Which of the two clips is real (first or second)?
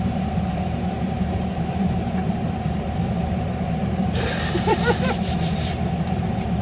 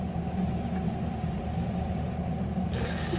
second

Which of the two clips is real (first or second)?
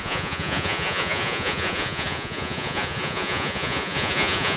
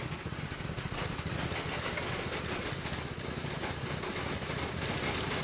second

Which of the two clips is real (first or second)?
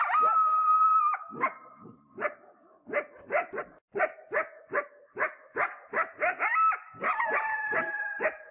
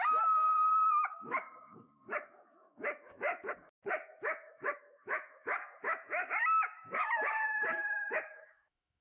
first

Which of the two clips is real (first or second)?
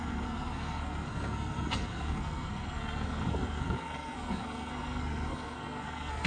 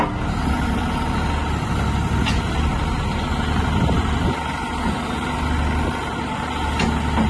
second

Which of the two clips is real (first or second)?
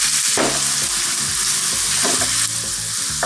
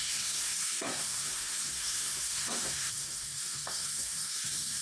first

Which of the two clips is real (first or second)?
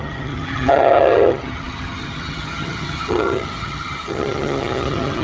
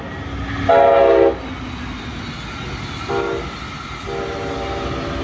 second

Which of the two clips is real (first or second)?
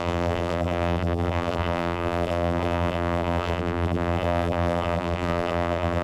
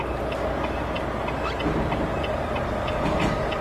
second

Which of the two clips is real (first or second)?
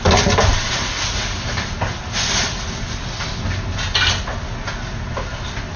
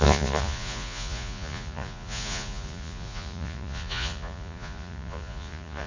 first